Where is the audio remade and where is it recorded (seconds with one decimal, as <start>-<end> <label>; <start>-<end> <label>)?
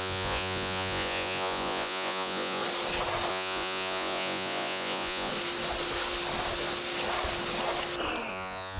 0.0-2.6 remade; 2.6-3.3 recorded; 3.3-5.3 remade; 5.3-8.3 recorded; 8.3-8.8 remade